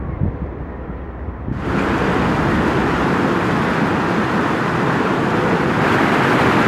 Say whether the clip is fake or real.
real